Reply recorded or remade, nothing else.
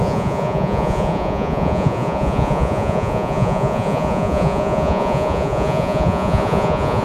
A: remade